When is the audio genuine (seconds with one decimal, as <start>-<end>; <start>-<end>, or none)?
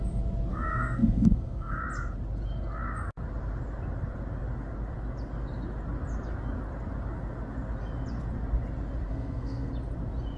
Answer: 0.0-0.5; 1.8-9.1; 9.7-10.4